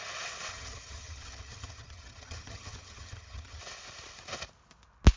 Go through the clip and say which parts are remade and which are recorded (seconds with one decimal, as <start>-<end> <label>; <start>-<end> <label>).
0.0-0.5 recorded; 0.5-3.6 remade; 3.6-5.2 recorded